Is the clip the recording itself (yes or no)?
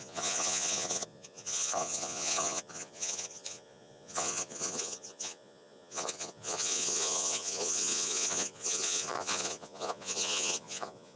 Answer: no